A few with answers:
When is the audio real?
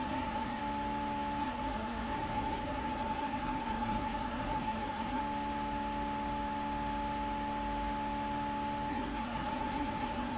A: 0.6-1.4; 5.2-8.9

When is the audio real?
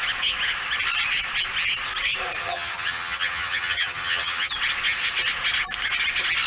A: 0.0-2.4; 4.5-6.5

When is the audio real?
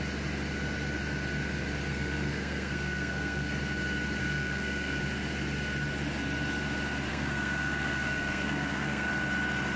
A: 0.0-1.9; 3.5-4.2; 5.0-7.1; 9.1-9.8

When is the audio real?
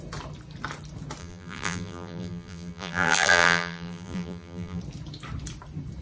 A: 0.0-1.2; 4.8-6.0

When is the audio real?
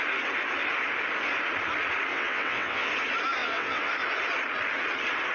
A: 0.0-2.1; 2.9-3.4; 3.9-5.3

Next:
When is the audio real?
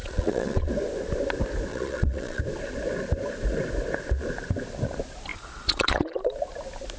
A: 0.7-1.7; 2.4-5.3; 6.3-7.0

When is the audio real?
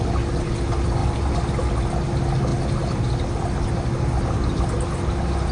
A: 0.0-5.5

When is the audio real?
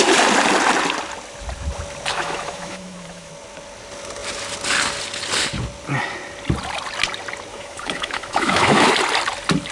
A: 0.0-2.1; 3.3-7.5; 8.9-9.7